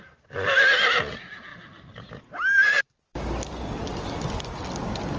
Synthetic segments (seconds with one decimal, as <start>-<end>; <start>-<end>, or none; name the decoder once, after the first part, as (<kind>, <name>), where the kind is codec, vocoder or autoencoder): none